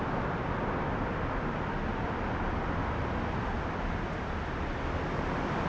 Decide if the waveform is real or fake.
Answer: real